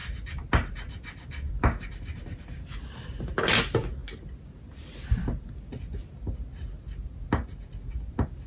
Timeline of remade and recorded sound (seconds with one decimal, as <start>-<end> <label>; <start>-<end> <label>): 0.0-8.5 recorded

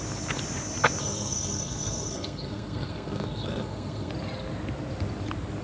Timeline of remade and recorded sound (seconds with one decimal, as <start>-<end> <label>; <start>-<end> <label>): 0.0-1.0 recorded; 1.0-4.1 remade; 4.1-5.6 recorded

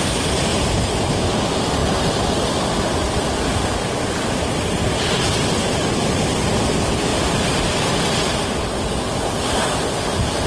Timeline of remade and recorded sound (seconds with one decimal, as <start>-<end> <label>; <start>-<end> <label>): 0.0-10.5 recorded

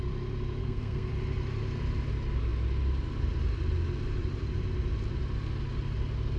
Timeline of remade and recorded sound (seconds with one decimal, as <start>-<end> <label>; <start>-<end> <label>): 0.0-0.6 recorded; 0.6-1.1 remade; 1.1-6.4 recorded

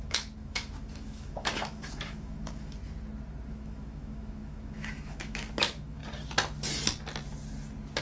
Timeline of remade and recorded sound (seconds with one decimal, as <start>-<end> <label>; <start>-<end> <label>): 0.0-2.8 remade; 2.8-3.5 recorded; 3.5-6.0 remade; 6.0-8.0 recorded

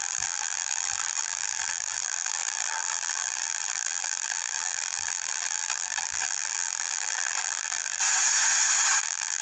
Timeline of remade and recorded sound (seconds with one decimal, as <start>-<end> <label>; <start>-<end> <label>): 0.0-8.0 remade; 8.0-9.0 recorded; 9.0-9.4 remade